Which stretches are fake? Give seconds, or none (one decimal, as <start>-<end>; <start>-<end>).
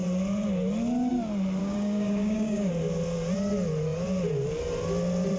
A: 1.6-2.7